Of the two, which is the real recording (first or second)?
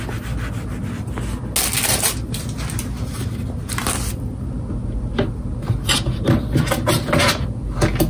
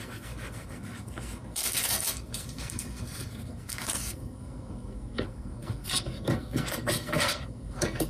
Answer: first